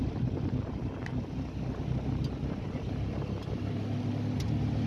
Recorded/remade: recorded